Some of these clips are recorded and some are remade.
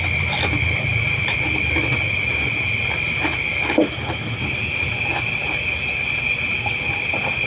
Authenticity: recorded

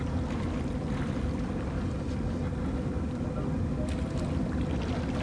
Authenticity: recorded